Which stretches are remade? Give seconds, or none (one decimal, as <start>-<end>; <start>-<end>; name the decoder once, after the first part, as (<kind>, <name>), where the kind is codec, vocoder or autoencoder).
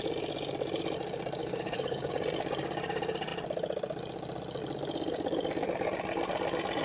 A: 1.4-2.1 (codec, DAC)